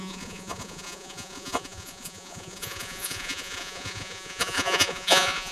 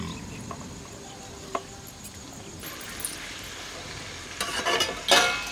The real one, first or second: second